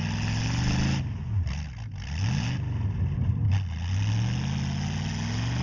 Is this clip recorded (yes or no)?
yes